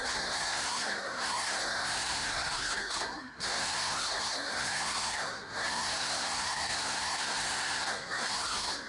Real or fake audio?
fake